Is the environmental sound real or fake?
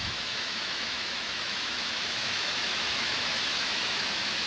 fake